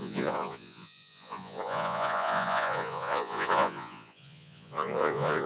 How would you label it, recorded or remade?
remade